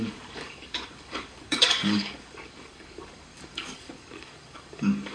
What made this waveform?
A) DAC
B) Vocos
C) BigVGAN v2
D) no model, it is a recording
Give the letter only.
A